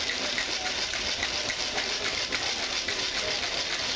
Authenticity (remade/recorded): recorded